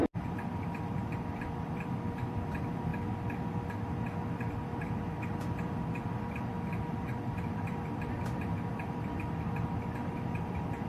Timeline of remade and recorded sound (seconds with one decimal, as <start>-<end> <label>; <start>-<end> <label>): 0.0-2.9 remade; 2.9-4.3 recorded; 4.3-10.9 remade